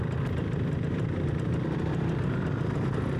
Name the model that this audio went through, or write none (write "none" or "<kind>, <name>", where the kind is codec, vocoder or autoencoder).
none